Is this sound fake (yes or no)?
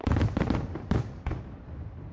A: yes